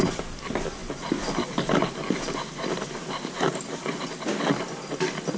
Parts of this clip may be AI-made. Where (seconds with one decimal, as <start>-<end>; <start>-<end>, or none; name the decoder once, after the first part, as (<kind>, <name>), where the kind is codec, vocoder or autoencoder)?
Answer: none